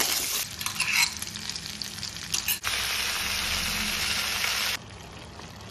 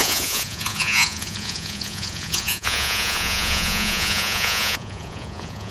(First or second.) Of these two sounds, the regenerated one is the second